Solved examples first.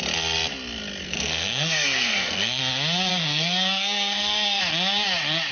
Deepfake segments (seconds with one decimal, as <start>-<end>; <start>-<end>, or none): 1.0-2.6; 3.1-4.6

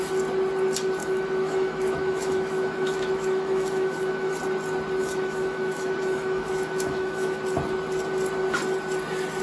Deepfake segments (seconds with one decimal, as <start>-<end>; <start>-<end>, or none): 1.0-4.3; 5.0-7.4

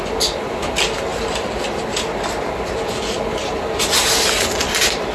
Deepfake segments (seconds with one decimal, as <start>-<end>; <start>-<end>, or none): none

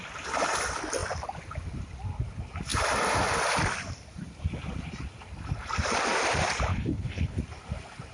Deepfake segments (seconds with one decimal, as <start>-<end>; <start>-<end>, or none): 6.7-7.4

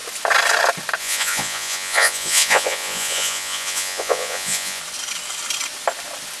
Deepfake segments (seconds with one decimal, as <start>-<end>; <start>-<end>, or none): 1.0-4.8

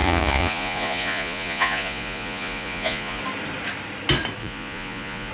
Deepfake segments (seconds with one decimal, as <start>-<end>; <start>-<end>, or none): 0.0-3.2; 4.4-5.3

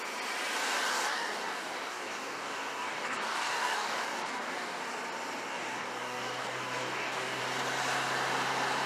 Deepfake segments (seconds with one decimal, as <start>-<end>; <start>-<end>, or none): 0.9-4.8; 5.5-7.4

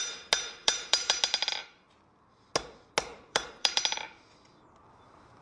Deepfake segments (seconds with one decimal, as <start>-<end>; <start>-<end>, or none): 0.6-1.2; 3.1-3.8